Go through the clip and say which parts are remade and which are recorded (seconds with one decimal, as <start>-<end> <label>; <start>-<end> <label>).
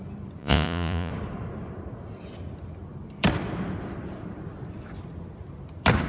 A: 0.0-0.4 recorded; 0.4-1.1 remade; 1.1-6.1 recorded